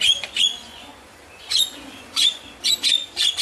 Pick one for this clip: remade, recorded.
remade